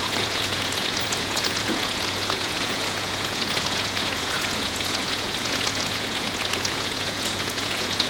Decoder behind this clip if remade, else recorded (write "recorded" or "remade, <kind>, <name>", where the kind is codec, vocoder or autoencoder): remade, vocoder, Vocos